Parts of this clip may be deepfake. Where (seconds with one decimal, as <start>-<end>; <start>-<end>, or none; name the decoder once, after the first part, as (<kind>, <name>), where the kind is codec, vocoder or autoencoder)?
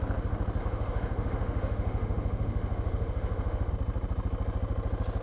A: 0.6-3.7 (autoencoder, DAC-VAE)